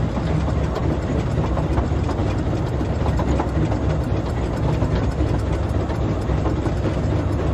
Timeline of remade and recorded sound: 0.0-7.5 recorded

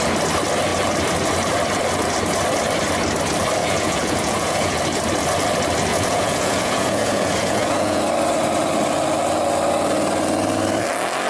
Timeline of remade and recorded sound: 0.0-3.6 recorded; 3.6-4.8 remade; 4.8-5.9 recorded; 5.9-8.0 remade; 8.0-11.3 recorded

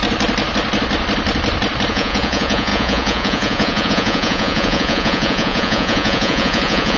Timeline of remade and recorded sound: 0.0-1.9 recorded; 1.9-7.0 remade

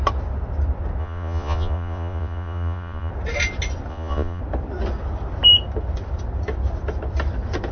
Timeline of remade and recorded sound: 0.0-1.0 recorded; 1.0-3.1 remade; 3.1-3.9 recorded; 3.9-4.4 remade; 4.4-7.7 recorded

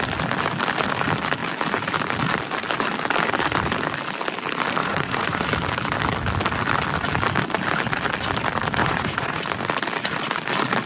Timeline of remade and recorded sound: 0.0-4.8 recorded; 4.8-5.4 remade; 5.4-8.8 recorded; 8.8-9.4 remade; 9.4-10.9 recorded

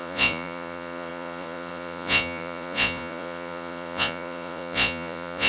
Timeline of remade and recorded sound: 0.0-5.5 remade

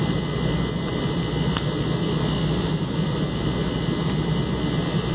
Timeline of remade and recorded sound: 0.0-5.1 recorded

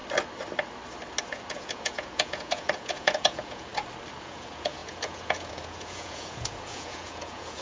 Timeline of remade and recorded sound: 0.0-1.2 recorded; 1.2-3.7 remade; 3.7-4.2 recorded; 4.2-7.6 remade